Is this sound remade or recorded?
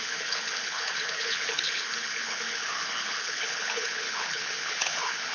remade